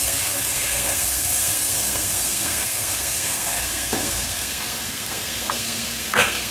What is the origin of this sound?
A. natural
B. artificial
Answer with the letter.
B